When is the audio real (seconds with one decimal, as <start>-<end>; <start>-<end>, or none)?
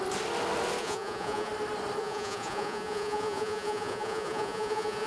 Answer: 0.0-0.8; 1.5-2.0